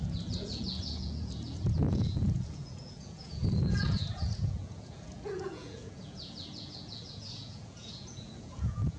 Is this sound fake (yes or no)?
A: yes